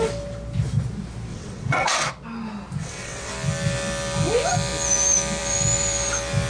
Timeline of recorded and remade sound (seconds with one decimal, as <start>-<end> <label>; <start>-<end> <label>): 0.0-1.3 recorded; 1.3-2.1 remade; 2.1-2.8 recorded; 2.8-3.3 remade; 3.3-6.5 recorded